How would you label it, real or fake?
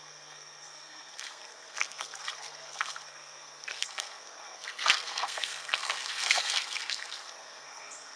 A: fake